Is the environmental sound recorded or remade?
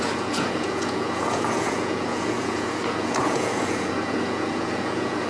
remade